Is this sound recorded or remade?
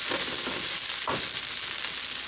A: recorded